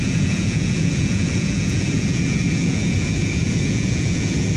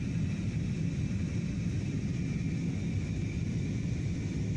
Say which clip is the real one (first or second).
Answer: second